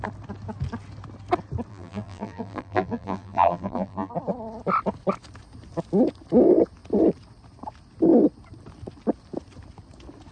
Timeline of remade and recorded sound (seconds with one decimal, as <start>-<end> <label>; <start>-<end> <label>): 0.0-1.7 recorded; 1.7-4.1 remade; 4.1-10.3 recorded